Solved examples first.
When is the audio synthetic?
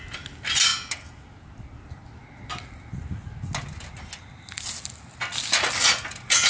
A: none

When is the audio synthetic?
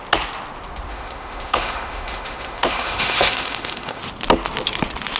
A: 0.9-4.0 (autoencoder, DAC-VAE)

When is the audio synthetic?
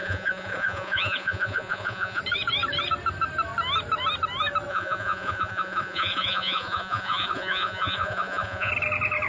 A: 0.0-2.2 (vocoder, Vocos); 4.7-8.7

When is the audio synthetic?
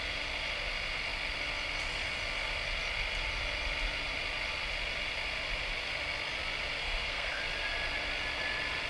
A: 6.8-7.4 (codec, SNAC)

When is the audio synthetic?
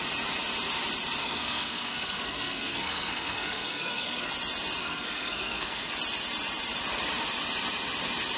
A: 1.2-4.3 (codec, SNAC); 4.8-5.9